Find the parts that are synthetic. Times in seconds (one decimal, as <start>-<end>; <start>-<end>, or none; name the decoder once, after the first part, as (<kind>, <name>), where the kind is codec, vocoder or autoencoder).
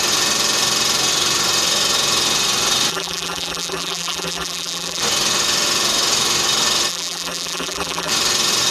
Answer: 2.9-5.0 (vocoder, BigVGAN v2); 6.9-8.1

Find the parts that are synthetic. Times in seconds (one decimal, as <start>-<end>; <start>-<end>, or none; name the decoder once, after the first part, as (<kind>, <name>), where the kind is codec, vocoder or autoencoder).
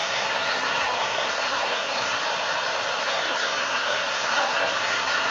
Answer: 0.0-2.2 (codec, SNAC); 3.0-5.3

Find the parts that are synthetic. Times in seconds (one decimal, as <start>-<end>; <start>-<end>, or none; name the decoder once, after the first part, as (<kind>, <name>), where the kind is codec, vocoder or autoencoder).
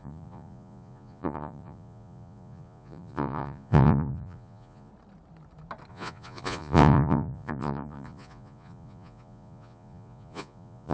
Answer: 0.0-4.9 (vocoder, Vocos); 5.9-10.9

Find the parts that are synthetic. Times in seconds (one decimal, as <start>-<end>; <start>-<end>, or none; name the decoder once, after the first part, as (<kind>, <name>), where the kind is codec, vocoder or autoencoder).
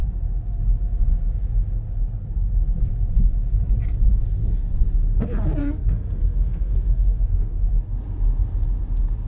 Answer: 5.6-7.7 (codec, SNAC)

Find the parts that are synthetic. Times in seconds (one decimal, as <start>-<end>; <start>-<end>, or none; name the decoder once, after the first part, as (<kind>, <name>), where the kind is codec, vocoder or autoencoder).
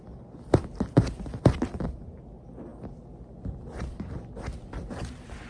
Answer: none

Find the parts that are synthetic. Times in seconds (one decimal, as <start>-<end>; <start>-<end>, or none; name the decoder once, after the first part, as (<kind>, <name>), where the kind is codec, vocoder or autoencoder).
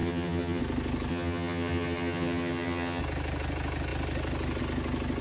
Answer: 0.0-0.6 (vocoder, HiFi-GAN); 1.1-3.0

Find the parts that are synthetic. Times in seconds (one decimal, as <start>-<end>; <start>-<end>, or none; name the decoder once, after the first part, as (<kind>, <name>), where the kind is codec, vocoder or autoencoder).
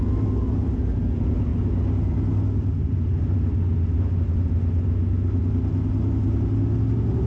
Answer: none